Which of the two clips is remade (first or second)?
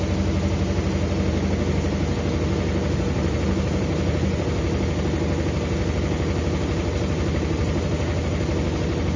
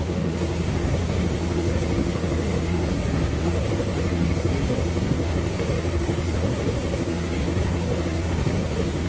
second